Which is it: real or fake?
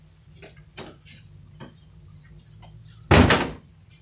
real